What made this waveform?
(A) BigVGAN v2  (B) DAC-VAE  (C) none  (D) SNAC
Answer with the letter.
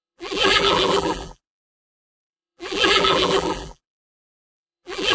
A